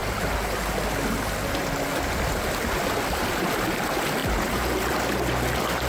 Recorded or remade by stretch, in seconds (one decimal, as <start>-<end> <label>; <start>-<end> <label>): 0.0-4.2 recorded; 4.2-4.9 remade; 4.9-5.9 recorded